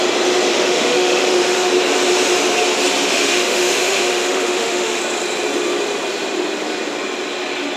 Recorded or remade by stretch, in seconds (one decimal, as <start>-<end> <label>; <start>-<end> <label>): 0.0-0.5 recorded; 0.5-1.7 remade; 1.7-3.1 recorded; 3.1-5.0 remade; 5.0-7.8 recorded